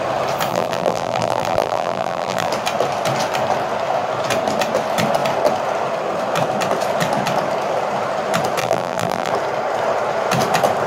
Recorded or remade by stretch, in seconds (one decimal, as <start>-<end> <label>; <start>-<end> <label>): 0.0-0.5 recorded; 0.5-2.5 remade; 2.5-8.6 recorded; 8.6-9.3 remade; 9.3-10.9 recorded